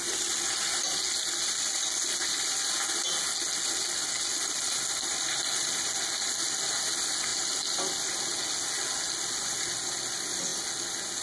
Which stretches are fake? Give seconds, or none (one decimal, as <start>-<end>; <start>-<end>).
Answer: none